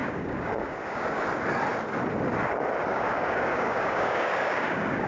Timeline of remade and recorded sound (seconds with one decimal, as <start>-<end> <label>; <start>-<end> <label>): 0.0-1.2 remade; 1.2-2.9 recorded; 2.9-5.1 remade